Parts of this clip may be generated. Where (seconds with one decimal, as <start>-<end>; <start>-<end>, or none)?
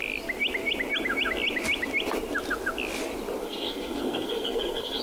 3.4-5.0